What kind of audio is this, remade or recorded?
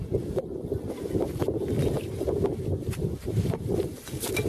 recorded